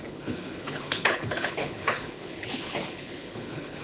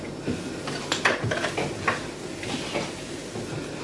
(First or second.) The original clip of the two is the second